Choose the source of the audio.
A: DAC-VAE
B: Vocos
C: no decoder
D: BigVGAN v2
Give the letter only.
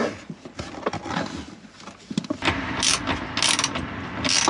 C